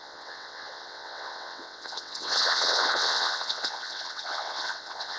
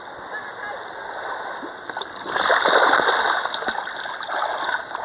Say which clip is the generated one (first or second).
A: first